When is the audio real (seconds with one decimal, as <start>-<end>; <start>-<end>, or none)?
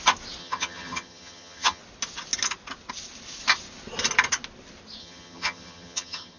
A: 0.0-0.4; 1.8-5.0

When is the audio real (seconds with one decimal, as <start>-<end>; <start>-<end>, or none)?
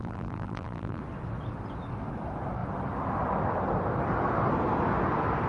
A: 1.0-5.5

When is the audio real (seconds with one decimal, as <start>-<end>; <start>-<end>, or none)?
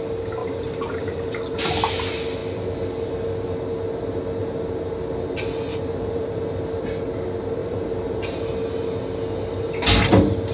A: 0.0-0.4; 1.4-5.7; 6.4-7.6; 8.5-10.5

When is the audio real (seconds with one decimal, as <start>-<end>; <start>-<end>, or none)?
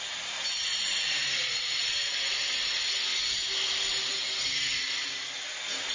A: 0.0-5.9